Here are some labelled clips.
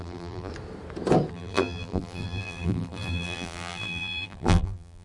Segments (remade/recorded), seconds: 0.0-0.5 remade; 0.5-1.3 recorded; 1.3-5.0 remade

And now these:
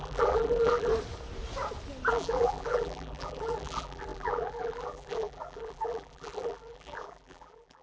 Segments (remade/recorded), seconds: 0.0-0.9 remade; 0.9-2.1 recorded; 2.1-7.8 remade